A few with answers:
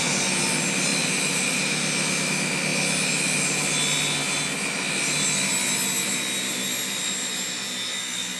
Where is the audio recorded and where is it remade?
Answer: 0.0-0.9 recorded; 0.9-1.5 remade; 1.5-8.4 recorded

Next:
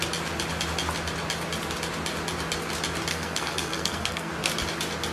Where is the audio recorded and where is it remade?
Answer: 0.0-3.1 recorded; 3.1-4.3 remade; 4.3-5.1 recorded

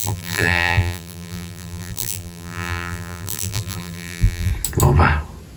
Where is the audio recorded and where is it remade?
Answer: 0.0-4.5 remade; 4.5-5.6 recorded

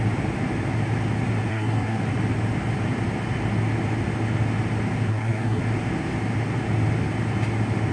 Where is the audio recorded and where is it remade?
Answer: 0.0-1.5 recorded; 1.5-2.0 remade; 2.0-5.1 recorded; 5.1-5.6 remade; 5.6-7.9 recorded